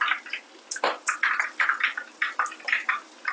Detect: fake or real real